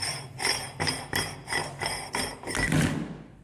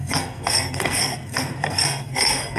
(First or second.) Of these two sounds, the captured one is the first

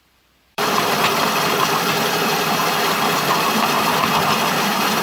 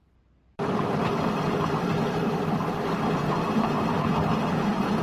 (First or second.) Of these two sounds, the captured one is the second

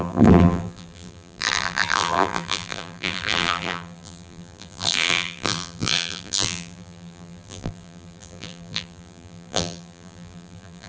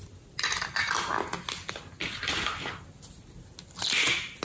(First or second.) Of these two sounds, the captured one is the second